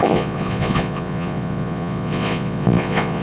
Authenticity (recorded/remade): remade